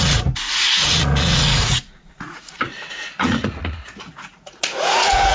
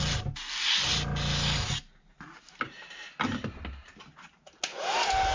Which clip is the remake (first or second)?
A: first